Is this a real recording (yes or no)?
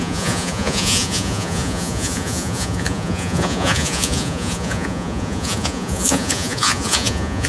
no